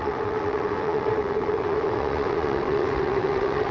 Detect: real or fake fake